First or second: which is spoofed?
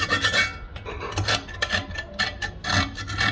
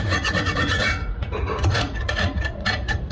second